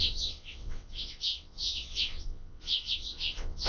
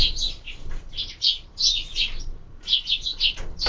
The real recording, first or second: second